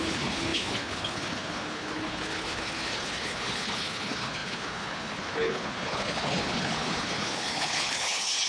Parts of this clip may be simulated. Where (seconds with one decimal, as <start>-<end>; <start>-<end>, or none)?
0.0-8.5